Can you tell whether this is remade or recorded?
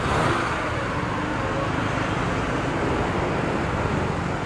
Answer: recorded